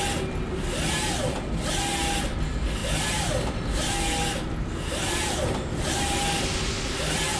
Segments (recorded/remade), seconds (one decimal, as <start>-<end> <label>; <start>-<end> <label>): 0.0-7.4 recorded